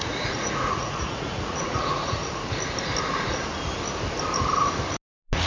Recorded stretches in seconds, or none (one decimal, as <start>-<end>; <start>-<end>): 2.2-5.5